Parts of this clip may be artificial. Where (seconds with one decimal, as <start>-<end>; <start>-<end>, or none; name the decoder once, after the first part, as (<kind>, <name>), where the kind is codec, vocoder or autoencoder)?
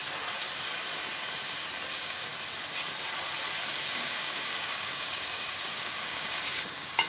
1.9-2.3 (codec, DAC); 3.7-7.1